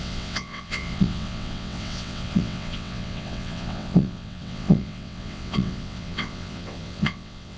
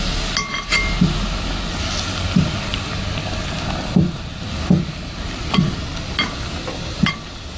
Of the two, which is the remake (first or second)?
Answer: first